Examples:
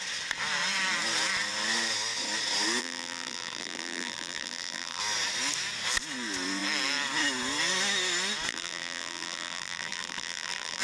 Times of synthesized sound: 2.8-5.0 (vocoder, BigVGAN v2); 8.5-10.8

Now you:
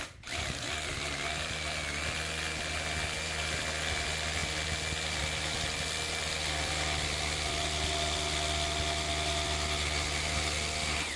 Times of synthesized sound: none

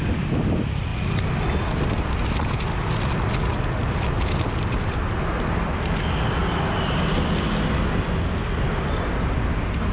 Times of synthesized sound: 0.0-0.9 (vocoder, BigVGAN v2); 2.3-6.4; 7.9-9.9

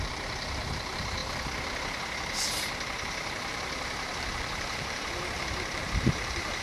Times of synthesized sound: 0.0-1.2 (vocoder, BigVGAN v2); 2.5-6.6